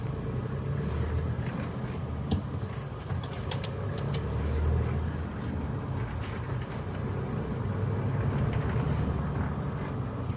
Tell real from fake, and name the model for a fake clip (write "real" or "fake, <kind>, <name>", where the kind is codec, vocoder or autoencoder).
real